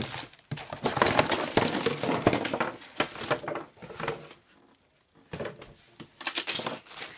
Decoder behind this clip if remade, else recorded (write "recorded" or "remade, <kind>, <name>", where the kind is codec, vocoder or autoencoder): recorded